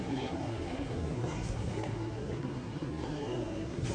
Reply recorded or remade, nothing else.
remade